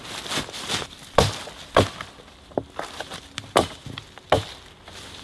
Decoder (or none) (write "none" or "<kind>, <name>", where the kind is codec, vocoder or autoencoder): none